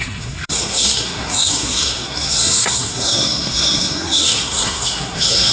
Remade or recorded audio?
remade